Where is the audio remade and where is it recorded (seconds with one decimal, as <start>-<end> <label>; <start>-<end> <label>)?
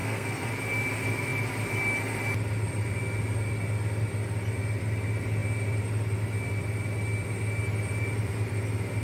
0.0-0.5 remade; 0.5-9.0 recorded